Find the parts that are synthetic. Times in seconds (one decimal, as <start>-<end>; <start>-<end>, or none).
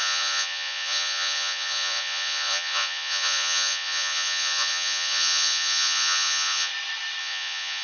0.0-6.7; 7.2-7.8